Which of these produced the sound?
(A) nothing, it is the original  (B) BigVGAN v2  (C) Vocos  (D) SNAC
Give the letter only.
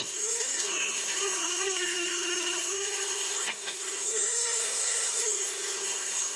D